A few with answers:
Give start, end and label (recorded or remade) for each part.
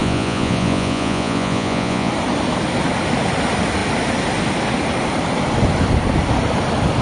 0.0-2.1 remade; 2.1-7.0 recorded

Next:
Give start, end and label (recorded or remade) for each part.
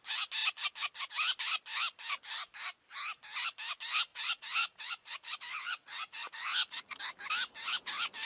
0.0-4.1 recorded; 4.1-7.0 remade; 7.0-8.3 recorded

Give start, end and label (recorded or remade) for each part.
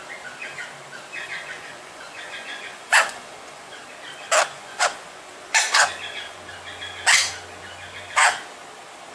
0.0-1.2 recorded; 1.2-3.8 remade; 3.8-4.5 recorded; 4.5-6.4 remade; 6.4-9.1 recorded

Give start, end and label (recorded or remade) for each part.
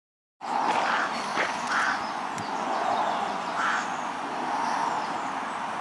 0.0-1.3 recorded; 1.3-4.3 remade; 4.3-5.8 recorded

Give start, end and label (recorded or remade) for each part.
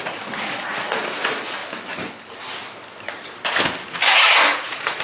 0.0-1.6 remade; 1.6-4.6 recorded; 4.6-5.0 remade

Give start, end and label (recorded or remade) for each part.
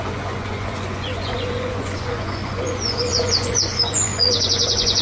0.0-5.0 remade